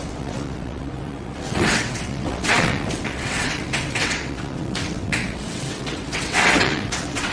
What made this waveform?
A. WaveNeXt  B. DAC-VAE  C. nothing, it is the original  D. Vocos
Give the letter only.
A